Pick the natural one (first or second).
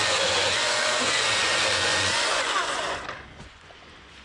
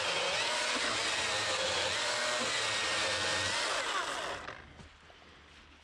second